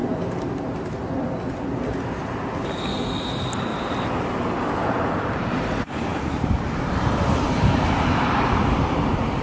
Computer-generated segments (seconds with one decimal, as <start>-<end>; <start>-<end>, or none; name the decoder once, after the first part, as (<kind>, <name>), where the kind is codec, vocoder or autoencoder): 3.2-3.7 (vocoder, BigVGAN v2); 5.1-9.4